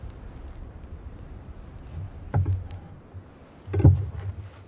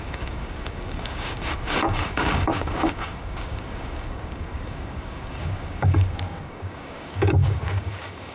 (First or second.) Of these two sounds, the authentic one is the first